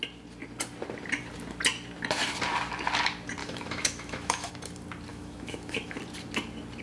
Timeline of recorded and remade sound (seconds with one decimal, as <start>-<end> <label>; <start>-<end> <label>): 0.0-3.4 recorded; 3.4-4.5 remade; 4.5-5.1 recorded; 5.1-6.0 remade; 6.0-6.8 recorded